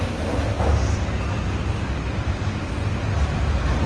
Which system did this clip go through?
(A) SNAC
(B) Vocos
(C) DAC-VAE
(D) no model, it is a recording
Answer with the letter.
D